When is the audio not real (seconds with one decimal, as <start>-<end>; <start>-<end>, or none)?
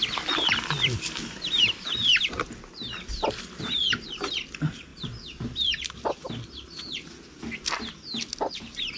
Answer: 0.0-4.9